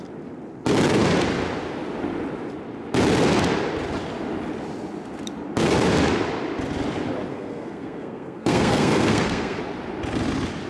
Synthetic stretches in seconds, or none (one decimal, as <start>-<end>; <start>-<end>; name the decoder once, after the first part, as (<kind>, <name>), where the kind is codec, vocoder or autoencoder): 7.3-9.6 (codec, SNAC)